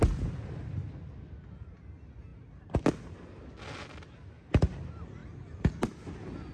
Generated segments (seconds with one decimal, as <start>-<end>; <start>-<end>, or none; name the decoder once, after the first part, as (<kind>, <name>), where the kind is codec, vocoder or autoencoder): none